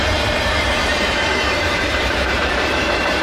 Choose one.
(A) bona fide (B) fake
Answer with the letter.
B